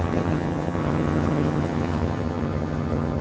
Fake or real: fake